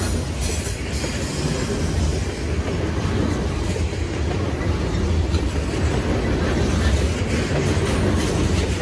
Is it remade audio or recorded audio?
recorded